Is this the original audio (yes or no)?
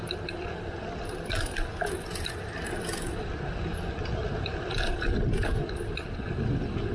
yes